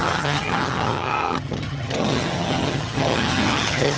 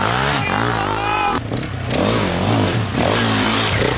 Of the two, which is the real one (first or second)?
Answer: second